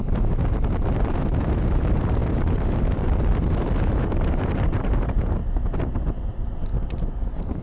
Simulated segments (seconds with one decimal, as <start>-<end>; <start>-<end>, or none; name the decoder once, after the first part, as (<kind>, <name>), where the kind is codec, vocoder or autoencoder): 0.0-5.4 (vocoder, BigVGAN v2); 6.0-6.7